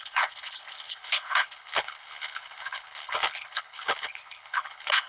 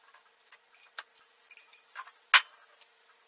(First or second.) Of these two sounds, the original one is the second